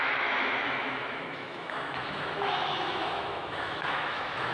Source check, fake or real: fake